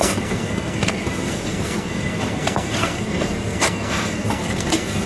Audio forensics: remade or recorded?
remade